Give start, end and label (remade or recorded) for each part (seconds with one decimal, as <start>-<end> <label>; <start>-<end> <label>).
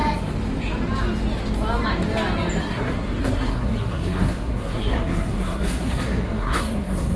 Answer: 0.0-2.6 recorded; 2.6-7.2 remade